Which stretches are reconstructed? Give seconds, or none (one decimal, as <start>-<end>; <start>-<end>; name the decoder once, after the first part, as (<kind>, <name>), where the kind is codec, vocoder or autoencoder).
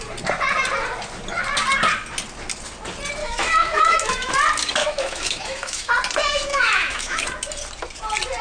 3.2-4.3 (autoencoder, DAC-VAE); 4.8-5.9; 6.5-7.2